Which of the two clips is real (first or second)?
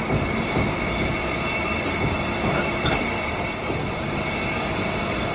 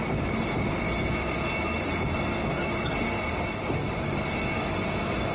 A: second